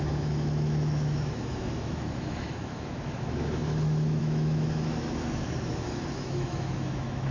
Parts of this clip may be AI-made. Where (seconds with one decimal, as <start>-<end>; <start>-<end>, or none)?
0.0-7.3